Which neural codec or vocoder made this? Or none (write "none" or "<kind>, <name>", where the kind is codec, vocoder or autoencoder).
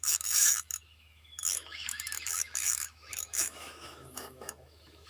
autoencoder, DAC-VAE